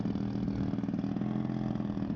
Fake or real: real